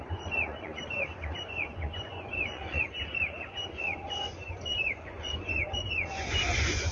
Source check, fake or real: fake